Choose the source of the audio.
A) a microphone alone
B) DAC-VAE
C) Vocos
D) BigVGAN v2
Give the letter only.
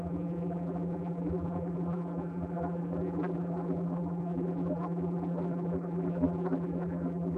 D